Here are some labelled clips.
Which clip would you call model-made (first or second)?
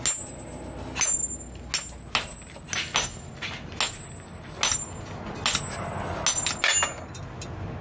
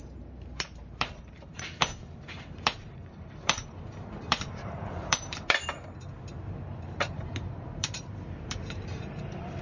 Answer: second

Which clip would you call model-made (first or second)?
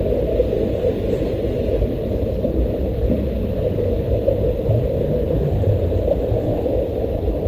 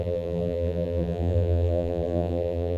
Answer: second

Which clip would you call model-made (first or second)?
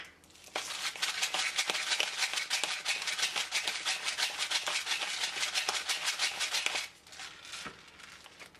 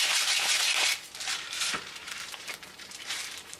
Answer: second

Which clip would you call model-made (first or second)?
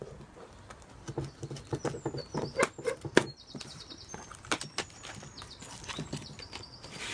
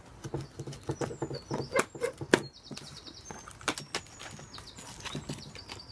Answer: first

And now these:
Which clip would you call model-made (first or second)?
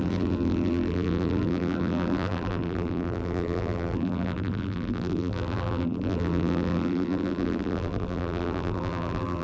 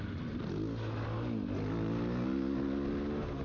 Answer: first